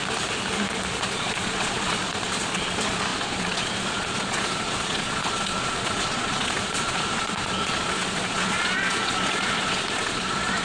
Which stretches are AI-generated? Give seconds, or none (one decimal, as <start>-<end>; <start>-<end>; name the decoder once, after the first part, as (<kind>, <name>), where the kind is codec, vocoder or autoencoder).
1.0-10.6 (vocoder, Vocos)